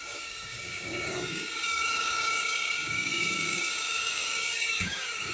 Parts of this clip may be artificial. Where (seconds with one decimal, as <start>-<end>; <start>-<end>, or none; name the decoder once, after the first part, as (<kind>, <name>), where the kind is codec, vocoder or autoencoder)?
0.0-5.3 (codec, DAC)